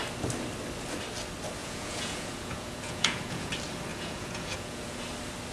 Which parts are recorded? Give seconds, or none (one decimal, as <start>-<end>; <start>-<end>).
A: 0.0-1.6; 3.5-3.9; 5.0-5.5